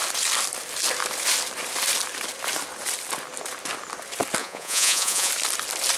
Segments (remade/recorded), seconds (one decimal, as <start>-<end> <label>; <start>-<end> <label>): 0.0-4.4 recorded; 4.4-5.3 remade; 5.3-6.0 recorded